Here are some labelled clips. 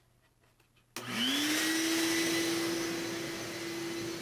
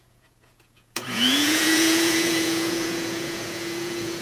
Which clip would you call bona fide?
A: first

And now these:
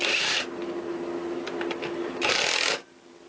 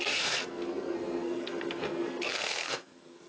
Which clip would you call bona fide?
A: first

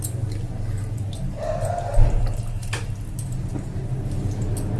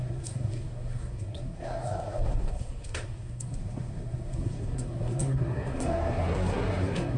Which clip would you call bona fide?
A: first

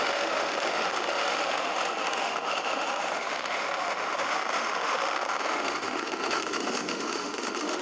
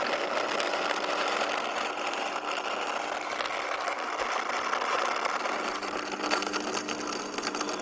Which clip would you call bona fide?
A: second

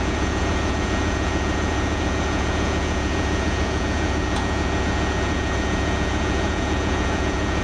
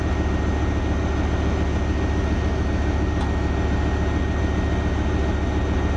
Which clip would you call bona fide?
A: second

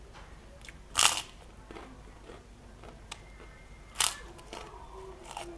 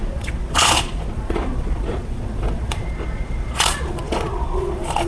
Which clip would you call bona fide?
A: first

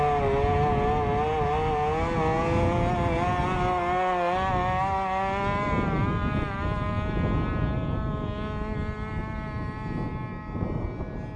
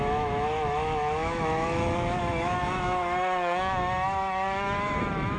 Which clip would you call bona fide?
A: first